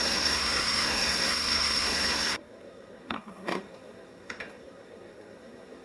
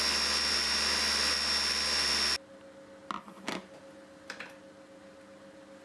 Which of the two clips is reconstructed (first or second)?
first